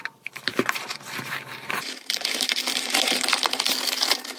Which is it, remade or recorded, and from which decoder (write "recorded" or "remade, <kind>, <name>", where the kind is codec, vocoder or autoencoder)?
remade, vocoder, BigVGAN v2